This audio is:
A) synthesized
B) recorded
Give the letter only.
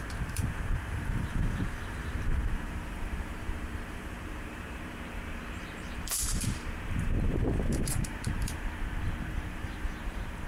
A